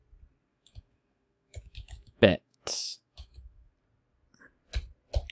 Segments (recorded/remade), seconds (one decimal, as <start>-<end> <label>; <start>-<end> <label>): 0.0-0.5 recorded; 0.5-3.7 remade; 3.7-5.3 recorded